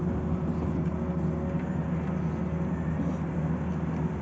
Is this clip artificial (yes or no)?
no